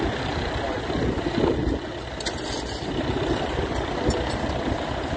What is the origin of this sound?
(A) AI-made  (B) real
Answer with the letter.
B